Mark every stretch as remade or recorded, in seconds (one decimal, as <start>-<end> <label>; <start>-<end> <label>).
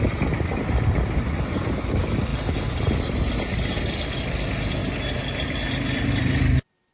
0.0-2.3 remade; 2.3-4.1 recorded; 4.1-4.8 remade; 4.8-6.1 recorded; 6.1-6.9 remade